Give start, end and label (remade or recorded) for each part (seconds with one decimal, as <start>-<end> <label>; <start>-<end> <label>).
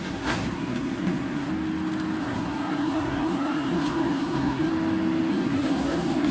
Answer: 0.0-1.5 remade; 1.5-2.2 recorded; 2.2-4.7 remade; 4.7-5.3 recorded; 5.3-6.3 remade